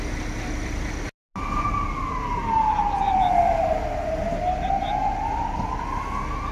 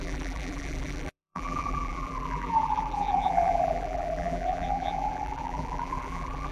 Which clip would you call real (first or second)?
first